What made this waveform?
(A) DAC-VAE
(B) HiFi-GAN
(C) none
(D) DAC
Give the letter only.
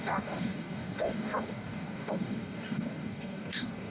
D